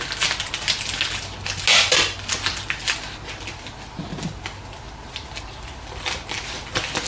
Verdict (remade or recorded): recorded